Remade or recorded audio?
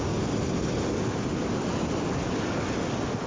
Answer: recorded